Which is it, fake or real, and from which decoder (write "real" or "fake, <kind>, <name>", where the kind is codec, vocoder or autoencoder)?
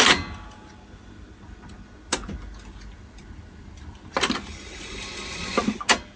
real